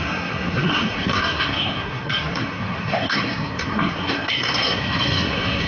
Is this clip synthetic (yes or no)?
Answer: yes